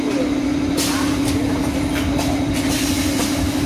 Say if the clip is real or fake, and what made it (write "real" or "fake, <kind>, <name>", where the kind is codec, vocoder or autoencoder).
real